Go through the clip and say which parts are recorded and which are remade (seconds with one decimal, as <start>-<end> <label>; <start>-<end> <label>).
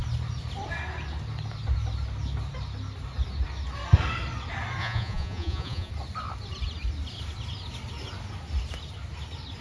0.0-4.8 recorded; 4.8-5.9 remade; 5.9-9.6 recorded